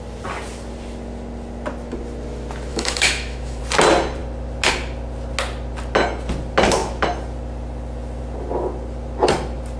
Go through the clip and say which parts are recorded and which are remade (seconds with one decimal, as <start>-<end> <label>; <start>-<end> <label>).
0.0-2.7 recorded; 2.7-3.6 remade; 3.6-9.8 recorded